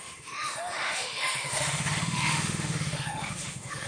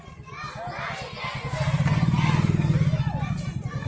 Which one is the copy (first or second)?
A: first